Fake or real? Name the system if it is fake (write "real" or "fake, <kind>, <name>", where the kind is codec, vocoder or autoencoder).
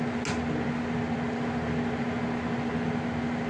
real